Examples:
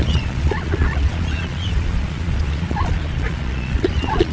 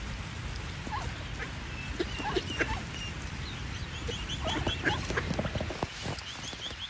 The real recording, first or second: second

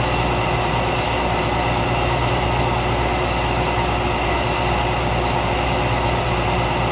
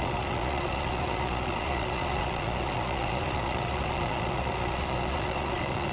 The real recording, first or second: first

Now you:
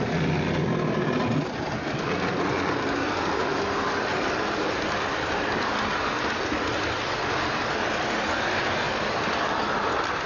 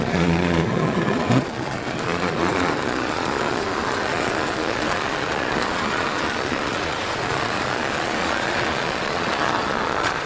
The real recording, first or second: first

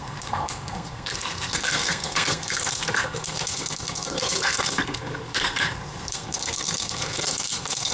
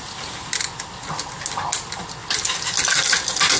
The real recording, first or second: second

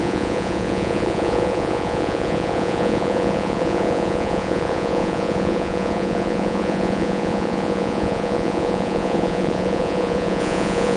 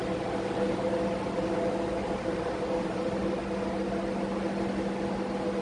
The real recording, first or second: second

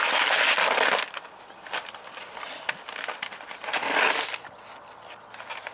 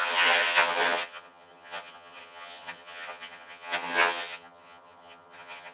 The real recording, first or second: first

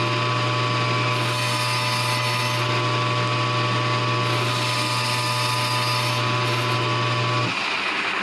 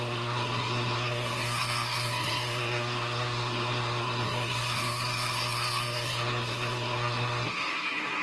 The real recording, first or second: first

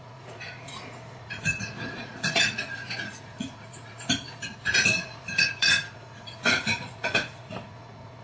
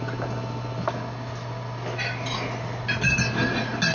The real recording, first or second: second